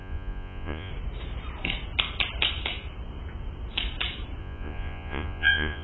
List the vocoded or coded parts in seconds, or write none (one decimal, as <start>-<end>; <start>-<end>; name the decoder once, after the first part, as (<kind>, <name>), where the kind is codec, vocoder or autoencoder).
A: 0.0-0.9 (vocoder, Vocos); 4.4-5.8